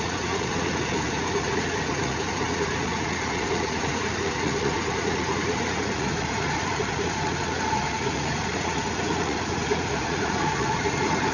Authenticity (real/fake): fake